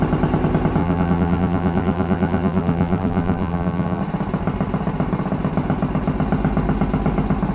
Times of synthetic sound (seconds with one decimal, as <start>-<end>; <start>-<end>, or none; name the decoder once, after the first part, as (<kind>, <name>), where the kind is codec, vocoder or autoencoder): 0.8-4.0 (vocoder, BigVGAN v2)